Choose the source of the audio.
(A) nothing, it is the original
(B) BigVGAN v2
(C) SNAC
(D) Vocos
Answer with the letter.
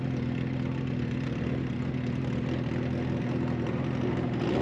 A